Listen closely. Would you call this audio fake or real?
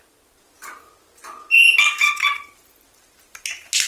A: real